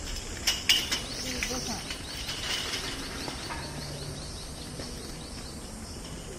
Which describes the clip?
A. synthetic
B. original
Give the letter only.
B